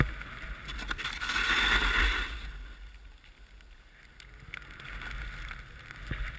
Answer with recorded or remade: recorded